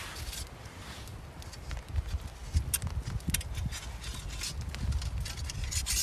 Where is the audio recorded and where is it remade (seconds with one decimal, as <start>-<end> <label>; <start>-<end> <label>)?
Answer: 0.0-6.0 recorded

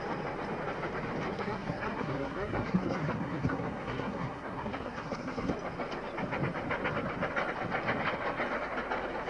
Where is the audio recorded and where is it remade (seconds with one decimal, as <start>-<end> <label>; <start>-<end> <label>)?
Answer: 0.0-1.3 recorded; 1.3-5.5 remade; 5.5-9.3 recorded